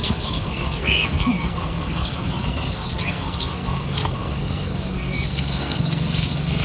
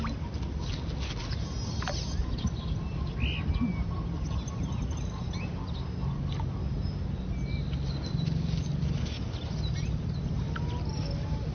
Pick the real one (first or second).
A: second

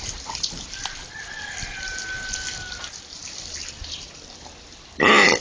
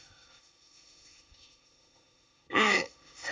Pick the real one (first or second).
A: first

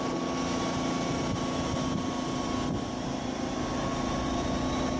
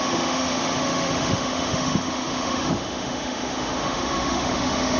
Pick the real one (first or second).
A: first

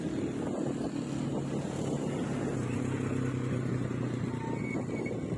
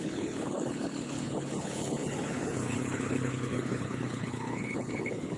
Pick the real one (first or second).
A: first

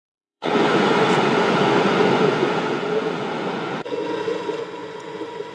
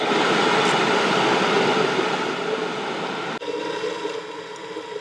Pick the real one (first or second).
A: second